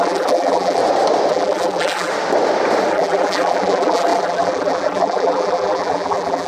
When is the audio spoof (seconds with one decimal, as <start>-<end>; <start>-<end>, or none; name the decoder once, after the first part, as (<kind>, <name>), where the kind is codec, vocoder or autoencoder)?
0.0-0.8 (vocoder, BigVGAN v2); 1.3-2.1; 2.9-6.5